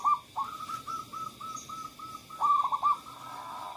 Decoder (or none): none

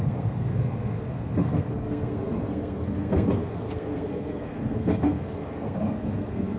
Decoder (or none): codec, SNAC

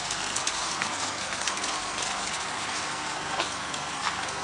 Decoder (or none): codec, SNAC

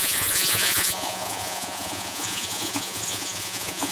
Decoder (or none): vocoder, Vocos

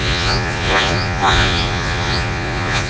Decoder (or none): vocoder, Vocos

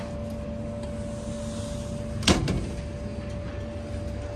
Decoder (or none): none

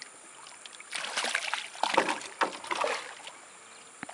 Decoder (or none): none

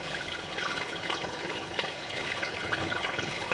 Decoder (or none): codec, HILCodec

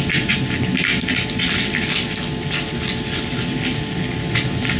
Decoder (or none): none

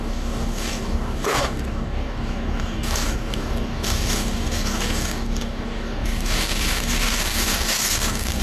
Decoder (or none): codec, DAC